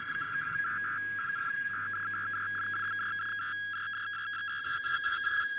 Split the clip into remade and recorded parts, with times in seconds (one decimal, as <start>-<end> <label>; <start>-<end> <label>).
0.0-0.6 remade; 0.6-1.2 recorded; 1.2-1.7 remade; 1.7-4.6 recorded; 4.6-5.6 remade